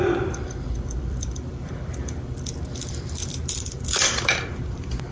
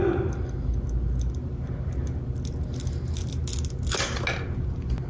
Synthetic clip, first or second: first